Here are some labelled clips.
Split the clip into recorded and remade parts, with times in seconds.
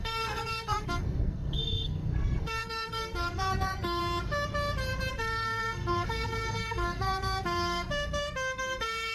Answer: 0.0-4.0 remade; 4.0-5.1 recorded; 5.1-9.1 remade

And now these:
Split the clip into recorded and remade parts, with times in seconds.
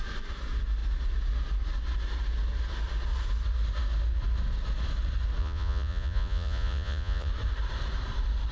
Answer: 0.0-5.4 recorded; 5.4-7.3 remade; 7.3-8.5 recorded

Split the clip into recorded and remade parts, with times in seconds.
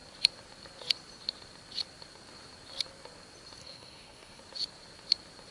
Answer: 0.0-3.6 recorded; 3.6-4.4 remade; 4.4-5.5 recorded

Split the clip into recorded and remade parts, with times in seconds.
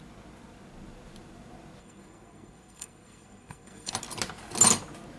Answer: 0.0-1.8 recorded; 1.8-3.9 remade; 3.9-5.2 recorded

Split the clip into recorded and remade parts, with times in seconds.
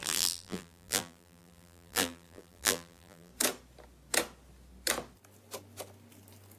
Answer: 0.0-3.3 remade; 3.3-6.6 recorded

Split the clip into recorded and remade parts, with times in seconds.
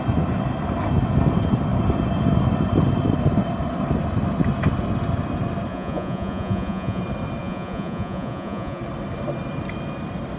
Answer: 0.0-5.7 recorded; 5.7-7.0 remade; 7.0-7.4 recorded; 7.4-8.8 remade; 8.8-10.4 recorded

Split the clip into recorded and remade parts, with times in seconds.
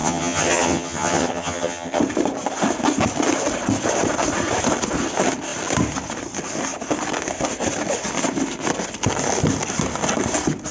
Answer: 0.0-2.0 remade; 2.0-10.7 recorded